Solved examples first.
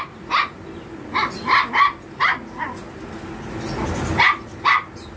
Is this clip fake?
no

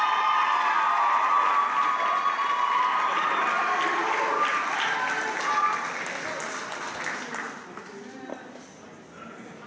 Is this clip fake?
no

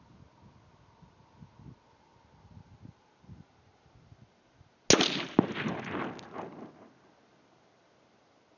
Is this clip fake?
no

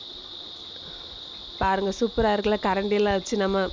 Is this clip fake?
no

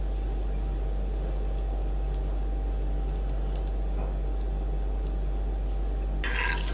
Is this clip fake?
no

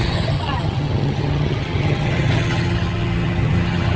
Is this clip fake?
yes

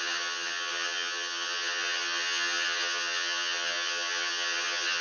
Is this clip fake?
yes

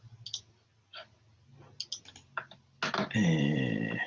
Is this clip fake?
no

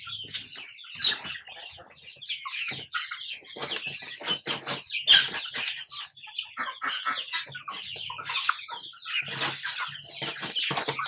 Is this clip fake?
no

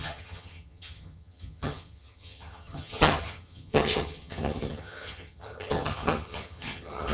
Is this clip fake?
yes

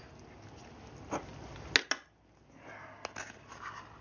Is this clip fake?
no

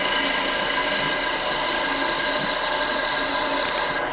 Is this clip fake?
no